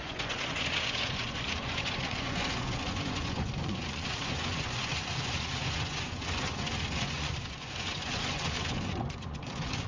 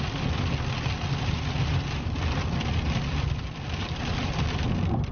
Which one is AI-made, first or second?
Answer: first